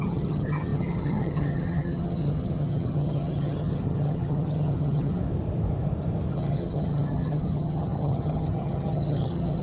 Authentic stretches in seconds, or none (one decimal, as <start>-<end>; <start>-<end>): 5.2-6.3